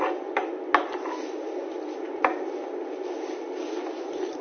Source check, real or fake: real